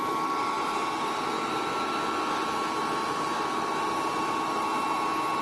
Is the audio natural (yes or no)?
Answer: yes